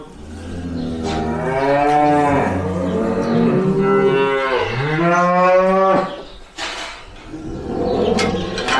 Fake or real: real